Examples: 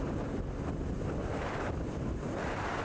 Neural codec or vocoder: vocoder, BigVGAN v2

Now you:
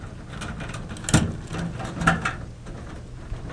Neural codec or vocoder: none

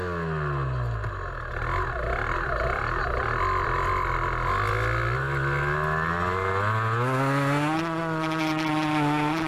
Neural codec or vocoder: none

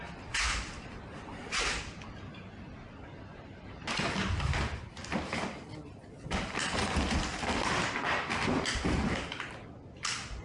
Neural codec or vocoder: vocoder, BigVGAN v2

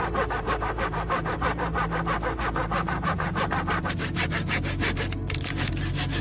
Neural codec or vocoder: vocoder, BigVGAN v2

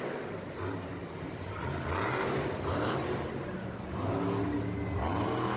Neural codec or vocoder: none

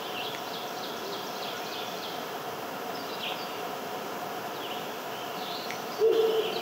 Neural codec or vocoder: none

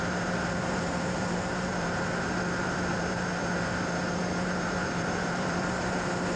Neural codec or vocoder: vocoder, BigVGAN v2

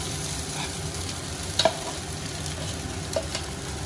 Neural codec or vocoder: none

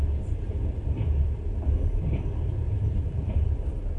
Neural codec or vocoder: vocoder, BigVGAN v2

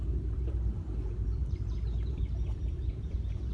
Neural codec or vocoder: vocoder, BigVGAN v2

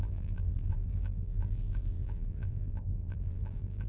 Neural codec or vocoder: vocoder, BigVGAN v2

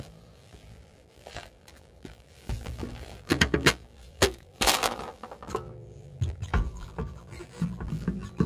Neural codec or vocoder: vocoder, BigVGAN v2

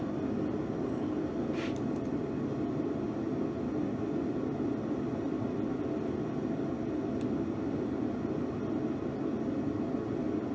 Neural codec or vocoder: none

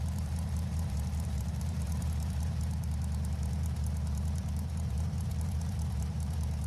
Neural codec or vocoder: vocoder, BigVGAN v2